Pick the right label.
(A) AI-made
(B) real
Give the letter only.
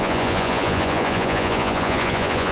A